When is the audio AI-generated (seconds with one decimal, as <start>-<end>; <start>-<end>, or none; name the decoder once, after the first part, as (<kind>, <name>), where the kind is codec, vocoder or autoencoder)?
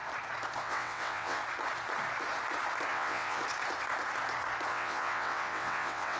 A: 0.6-1.4 (vocoder, WaveNeXt); 2.9-3.4; 4.7-6.2